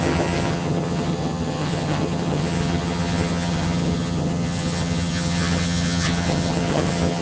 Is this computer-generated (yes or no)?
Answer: yes